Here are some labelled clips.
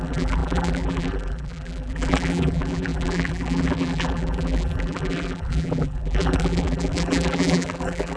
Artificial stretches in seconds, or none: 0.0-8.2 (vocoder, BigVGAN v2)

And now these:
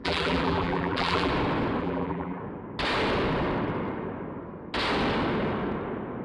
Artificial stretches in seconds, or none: 0.0-1.3 (vocoder, BigVGAN v2); 1.8-2.4

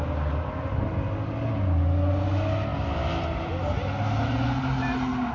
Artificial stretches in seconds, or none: none

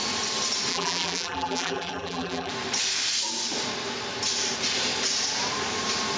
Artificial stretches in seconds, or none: 0.7-2.5 (vocoder, BigVGAN v2)

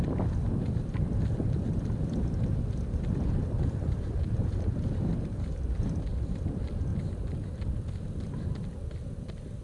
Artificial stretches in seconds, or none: 0.4-4.3 (vocoder, BigVGAN v2)

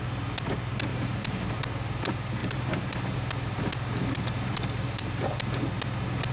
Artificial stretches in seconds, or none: 0.9-1.5 (vocoder, BigVGAN v2); 2.4-3.0; 4.0-5.2

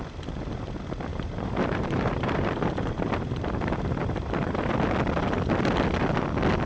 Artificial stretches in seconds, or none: 1.1-4.7 (vocoder, BigVGAN v2)